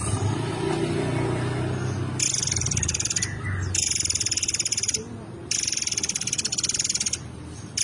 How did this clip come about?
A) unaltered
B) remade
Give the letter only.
A